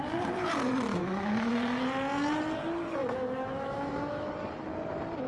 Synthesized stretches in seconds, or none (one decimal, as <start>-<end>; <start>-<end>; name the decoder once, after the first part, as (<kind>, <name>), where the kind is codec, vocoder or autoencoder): 0.9-1.5 (autoencoder, DAC-VAE); 3.0-4.3